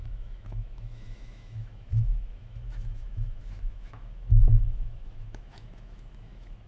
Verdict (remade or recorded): remade